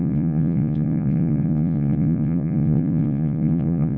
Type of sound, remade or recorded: remade